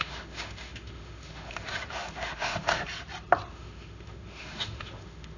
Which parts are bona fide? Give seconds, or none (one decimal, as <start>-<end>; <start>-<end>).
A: 2.8-3.5